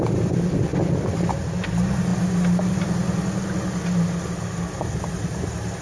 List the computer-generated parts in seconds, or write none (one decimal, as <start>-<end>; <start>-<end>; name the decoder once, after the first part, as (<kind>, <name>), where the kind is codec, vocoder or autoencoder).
none